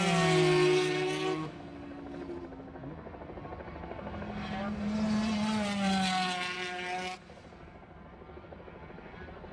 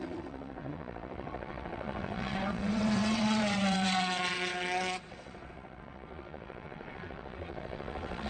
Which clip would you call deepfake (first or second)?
second